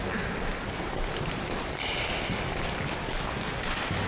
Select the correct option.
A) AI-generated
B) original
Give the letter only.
B